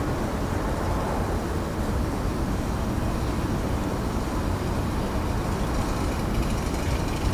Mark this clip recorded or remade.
recorded